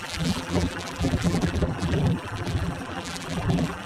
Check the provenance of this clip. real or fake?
fake